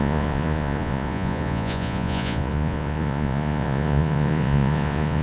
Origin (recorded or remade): remade